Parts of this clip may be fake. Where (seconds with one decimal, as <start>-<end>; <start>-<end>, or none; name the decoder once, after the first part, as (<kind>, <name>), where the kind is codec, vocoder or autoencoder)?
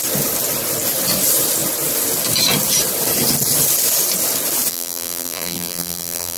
4.7-6.4 (vocoder, BigVGAN v2)